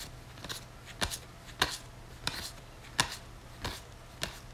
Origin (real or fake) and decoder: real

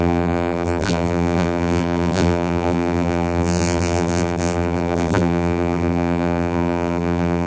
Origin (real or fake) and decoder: fake, vocoder, BigVGAN v2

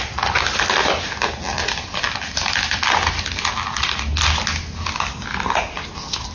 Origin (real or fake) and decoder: real